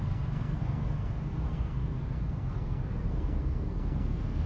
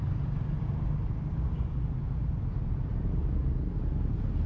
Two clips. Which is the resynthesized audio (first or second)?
first